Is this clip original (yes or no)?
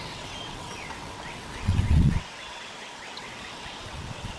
no